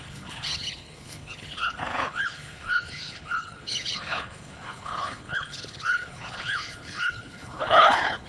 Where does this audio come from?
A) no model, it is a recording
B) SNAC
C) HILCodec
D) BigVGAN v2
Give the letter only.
C